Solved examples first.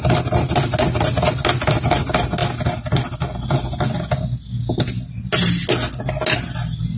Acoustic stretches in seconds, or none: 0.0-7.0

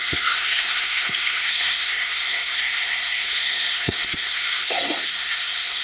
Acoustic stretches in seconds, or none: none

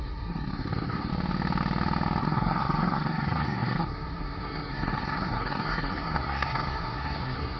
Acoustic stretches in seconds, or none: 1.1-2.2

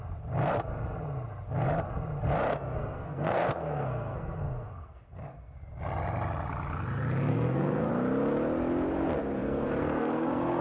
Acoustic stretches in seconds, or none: 0.0-2.5; 5.7-7.3; 7.9-9.4